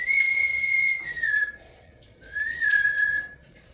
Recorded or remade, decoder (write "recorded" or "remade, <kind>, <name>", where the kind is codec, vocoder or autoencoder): remade, vocoder, Vocos